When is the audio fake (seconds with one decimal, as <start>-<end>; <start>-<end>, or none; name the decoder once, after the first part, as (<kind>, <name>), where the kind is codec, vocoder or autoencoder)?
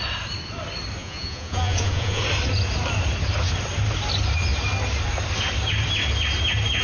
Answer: 1.0-2.2 (vocoder, Vocos)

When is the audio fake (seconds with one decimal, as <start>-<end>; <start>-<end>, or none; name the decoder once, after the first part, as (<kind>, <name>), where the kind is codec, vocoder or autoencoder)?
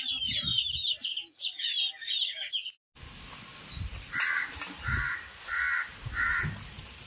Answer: none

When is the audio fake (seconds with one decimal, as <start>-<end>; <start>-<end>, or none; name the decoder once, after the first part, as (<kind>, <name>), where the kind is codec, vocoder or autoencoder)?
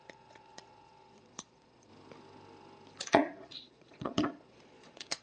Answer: 0.0-1.9 (vocoder, Vocos); 3.0-5.2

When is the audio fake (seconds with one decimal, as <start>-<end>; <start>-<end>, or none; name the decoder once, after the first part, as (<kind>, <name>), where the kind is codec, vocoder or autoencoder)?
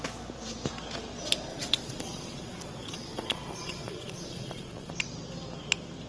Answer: 1.5-4.9 (vocoder, Vocos)